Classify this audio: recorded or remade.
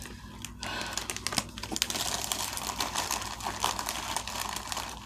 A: recorded